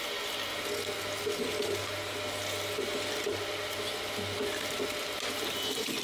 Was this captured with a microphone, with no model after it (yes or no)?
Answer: yes